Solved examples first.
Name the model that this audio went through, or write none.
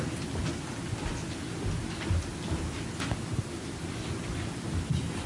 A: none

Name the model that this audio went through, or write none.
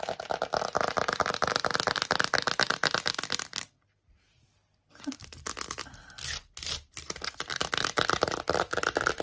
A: none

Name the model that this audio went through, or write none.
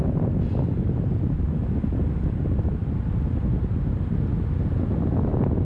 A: none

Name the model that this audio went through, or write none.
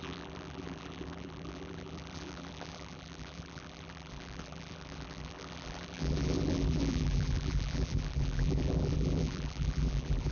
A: vocoder, BigVGAN v2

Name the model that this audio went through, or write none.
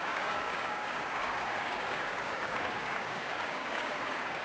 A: codec, DAC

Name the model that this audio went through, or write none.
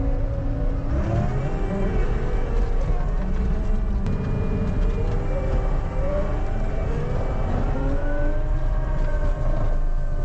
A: none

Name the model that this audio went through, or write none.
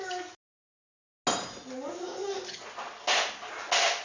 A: none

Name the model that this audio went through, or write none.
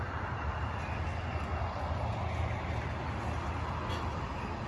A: none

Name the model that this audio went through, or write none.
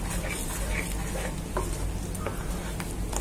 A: none